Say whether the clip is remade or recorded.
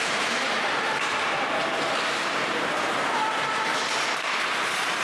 remade